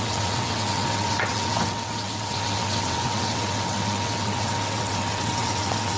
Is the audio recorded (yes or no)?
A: no